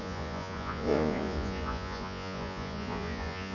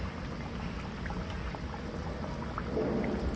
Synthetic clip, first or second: first